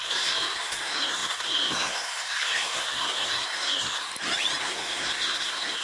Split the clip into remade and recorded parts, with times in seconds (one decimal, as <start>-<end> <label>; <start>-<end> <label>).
0.0-4.1 remade; 4.1-4.6 recorded; 4.6-5.8 remade